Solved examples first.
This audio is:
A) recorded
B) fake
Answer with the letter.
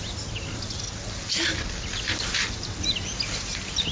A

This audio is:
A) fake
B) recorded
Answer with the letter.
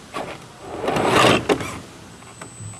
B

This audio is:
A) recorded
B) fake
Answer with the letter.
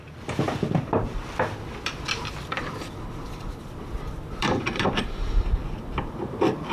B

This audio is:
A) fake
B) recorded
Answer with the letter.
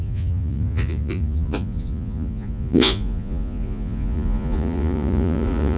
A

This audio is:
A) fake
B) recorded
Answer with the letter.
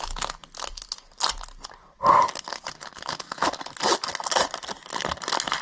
B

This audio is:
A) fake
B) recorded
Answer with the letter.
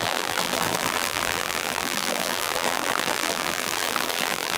A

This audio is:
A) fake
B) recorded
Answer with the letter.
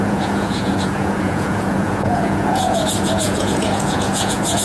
A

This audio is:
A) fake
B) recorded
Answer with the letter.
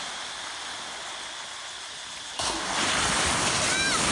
B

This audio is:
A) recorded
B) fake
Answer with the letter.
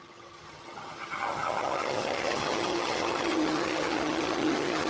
B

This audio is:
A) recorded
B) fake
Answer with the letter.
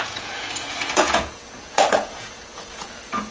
B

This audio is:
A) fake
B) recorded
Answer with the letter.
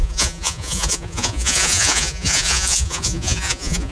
A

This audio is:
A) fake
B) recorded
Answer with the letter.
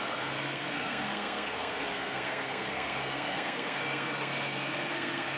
A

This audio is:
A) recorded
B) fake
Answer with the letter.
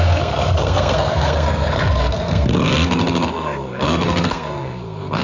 B